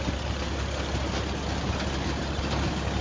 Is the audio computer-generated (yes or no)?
no